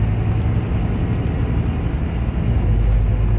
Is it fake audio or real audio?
real